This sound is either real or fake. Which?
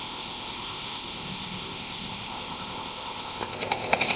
fake